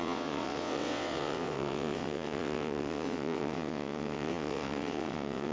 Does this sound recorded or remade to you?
remade